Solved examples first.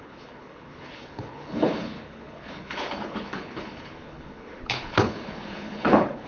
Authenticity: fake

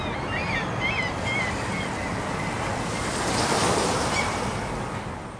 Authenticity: real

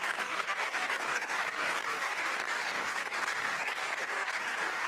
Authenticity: fake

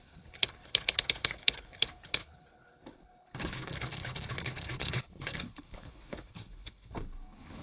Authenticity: fake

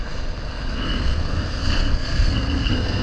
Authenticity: fake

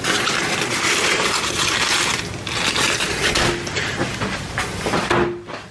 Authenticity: real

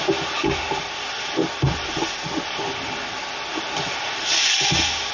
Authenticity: real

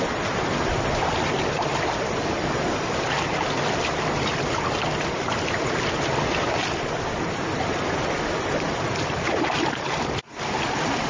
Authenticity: real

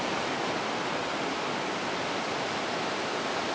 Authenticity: real